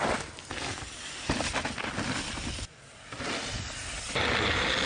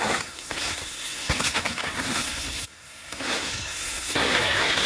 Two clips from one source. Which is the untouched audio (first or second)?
first